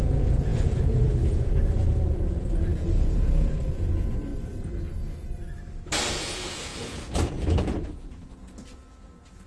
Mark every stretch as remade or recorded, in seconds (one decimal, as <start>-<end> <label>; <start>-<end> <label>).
0.0-4.3 remade; 4.3-6.1 recorded; 6.1-9.5 remade

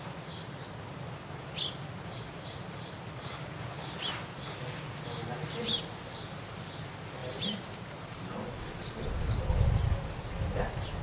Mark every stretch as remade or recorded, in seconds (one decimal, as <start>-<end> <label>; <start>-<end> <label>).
0.0-7.2 recorded; 7.2-8.2 remade; 8.2-11.0 recorded

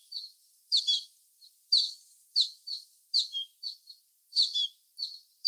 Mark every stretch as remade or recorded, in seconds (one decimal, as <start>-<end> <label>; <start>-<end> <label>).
0.0-5.5 recorded

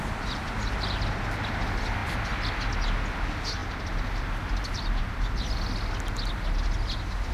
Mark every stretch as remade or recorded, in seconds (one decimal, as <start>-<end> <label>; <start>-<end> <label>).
0.0-7.3 recorded

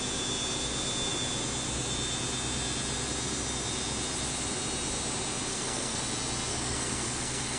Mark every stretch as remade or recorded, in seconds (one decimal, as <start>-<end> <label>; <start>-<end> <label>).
0.0-5.5 recorded; 5.5-6.0 remade; 6.0-6.5 recorded; 6.5-7.6 remade

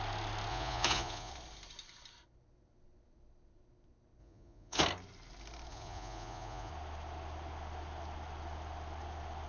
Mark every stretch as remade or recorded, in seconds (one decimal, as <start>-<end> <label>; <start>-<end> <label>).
0.0-0.5 recorded; 0.5-1.3 remade; 1.3-4.2 recorded; 4.2-4.8 remade; 4.8-5.7 recorded; 5.7-6.7 remade; 6.7-9.5 recorded

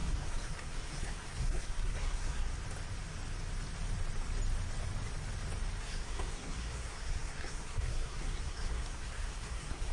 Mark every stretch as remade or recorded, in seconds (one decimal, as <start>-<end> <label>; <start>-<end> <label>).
0.0-2.5 remade; 2.5-5.8 recorded; 5.8-9.9 remade